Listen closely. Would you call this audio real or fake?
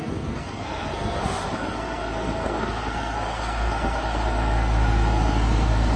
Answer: fake